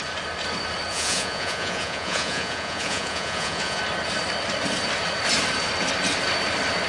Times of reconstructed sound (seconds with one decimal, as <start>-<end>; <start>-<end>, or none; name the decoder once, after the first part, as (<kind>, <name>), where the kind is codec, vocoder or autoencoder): 0.9-3.8 (vocoder, Vocos)